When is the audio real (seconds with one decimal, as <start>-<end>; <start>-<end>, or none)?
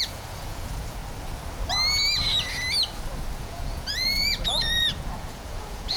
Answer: 1.0-3.4